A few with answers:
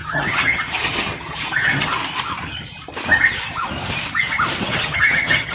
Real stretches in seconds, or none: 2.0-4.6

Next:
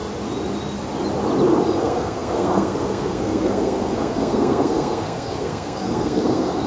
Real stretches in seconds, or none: 0.0-1.8

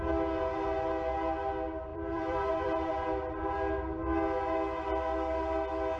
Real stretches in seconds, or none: 0.0-1.9; 2.9-6.0